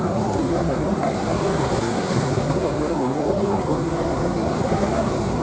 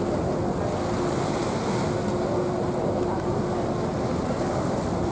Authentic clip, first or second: second